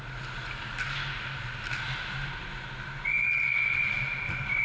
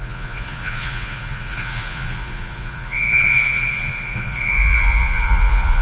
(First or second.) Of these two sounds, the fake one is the second